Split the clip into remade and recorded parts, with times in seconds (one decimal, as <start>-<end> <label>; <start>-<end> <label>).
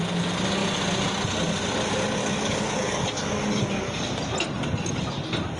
0.0-2.2 recorded; 2.2-4.1 remade; 4.1-5.6 recorded